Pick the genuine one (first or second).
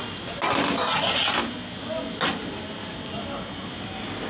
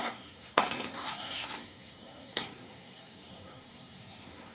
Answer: first